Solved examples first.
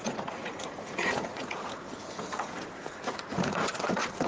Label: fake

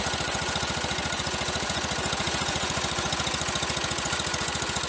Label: fake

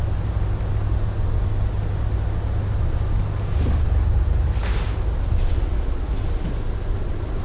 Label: real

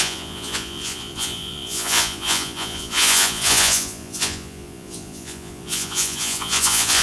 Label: fake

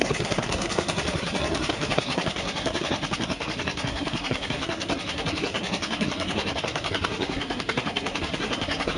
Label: fake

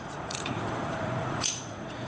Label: fake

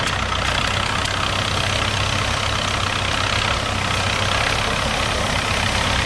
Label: real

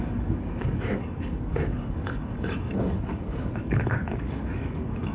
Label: fake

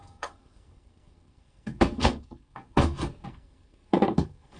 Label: fake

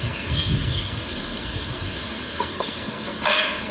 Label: fake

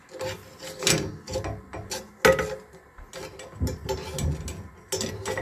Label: real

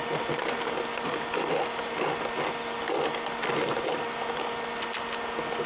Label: real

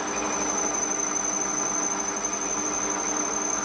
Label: real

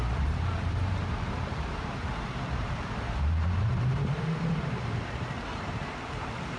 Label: fake